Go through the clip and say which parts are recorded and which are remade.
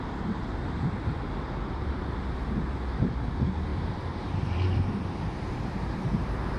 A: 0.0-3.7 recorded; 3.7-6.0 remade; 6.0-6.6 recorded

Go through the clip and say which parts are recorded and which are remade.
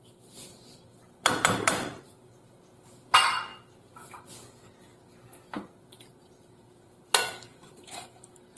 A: 0.0-3.5 remade; 3.5-5.8 recorded; 5.8-8.6 remade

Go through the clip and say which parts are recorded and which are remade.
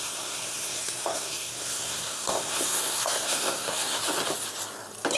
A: 0.0-4.0 remade; 4.0-5.2 recorded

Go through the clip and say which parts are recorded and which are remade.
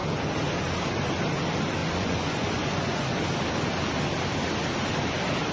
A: 0.0-1.8 recorded; 1.8-3.2 remade; 3.2-5.5 recorded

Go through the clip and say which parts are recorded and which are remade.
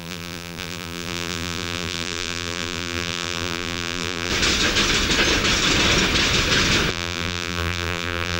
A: 0.0-4.3 remade; 4.3-6.9 recorded; 6.9-8.4 remade